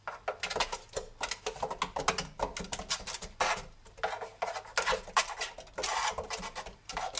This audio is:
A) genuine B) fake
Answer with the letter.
A